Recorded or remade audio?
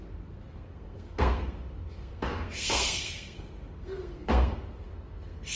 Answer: remade